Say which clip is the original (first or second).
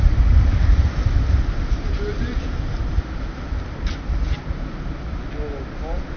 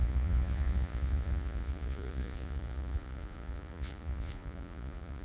first